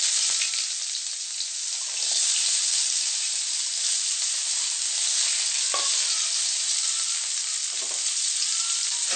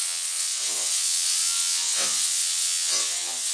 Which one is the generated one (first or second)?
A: second